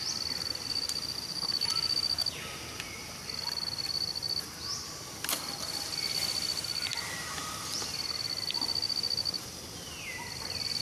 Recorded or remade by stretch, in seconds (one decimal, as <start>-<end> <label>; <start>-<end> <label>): 0.0-10.8 recorded